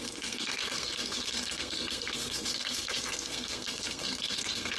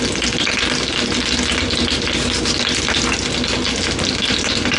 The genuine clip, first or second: second